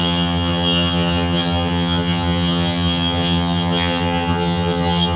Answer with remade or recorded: remade